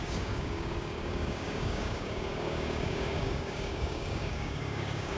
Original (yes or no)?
no